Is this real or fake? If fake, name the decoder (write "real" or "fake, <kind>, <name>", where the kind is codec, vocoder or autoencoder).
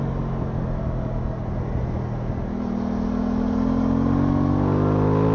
real